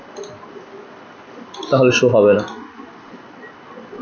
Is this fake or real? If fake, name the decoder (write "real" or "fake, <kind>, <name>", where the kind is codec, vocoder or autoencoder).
real